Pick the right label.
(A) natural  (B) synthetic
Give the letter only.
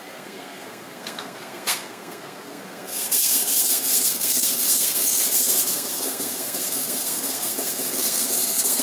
B